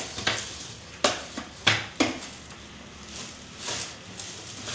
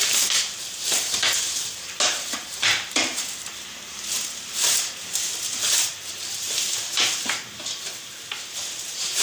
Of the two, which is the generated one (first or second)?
second